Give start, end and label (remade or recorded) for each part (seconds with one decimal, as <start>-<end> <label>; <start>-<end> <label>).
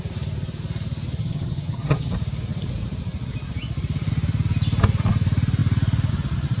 0.0-1.2 recorded; 1.2-2.1 remade; 2.1-6.6 recorded